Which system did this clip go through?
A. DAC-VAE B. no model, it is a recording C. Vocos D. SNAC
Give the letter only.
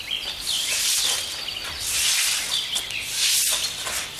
B